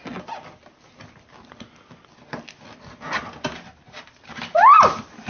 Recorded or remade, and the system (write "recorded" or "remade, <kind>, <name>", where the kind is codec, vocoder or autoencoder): recorded